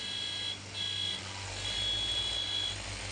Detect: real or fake real